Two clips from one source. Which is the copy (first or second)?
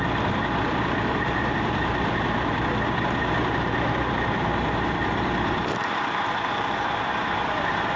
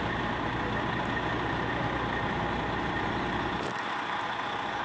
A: first